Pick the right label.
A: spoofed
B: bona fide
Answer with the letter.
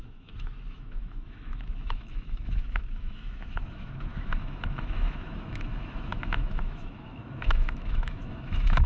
A